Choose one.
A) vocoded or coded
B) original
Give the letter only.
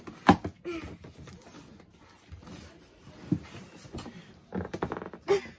B